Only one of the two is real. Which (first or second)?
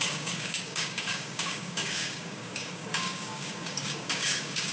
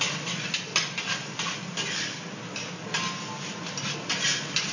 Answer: second